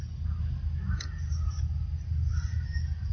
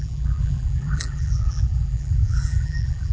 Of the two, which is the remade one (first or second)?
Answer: second